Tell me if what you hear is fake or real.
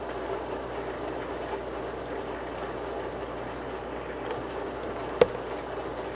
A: real